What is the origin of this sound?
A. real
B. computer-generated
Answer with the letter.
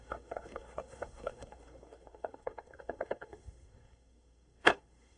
B